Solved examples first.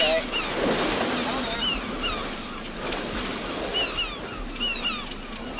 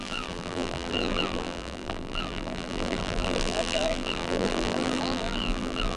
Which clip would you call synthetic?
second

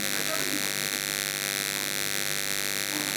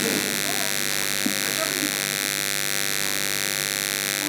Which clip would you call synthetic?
first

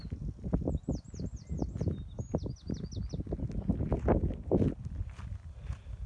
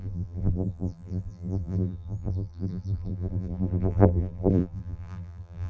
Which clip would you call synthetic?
second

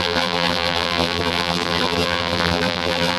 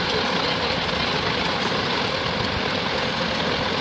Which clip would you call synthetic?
first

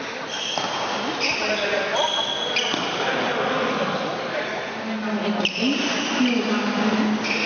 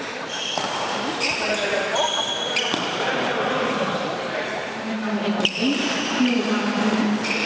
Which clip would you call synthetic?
second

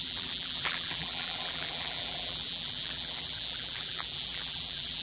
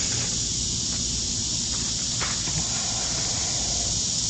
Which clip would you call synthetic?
first